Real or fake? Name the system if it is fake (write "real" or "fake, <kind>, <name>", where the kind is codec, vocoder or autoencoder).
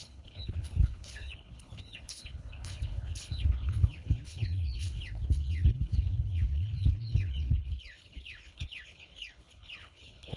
fake, codec, HILCodec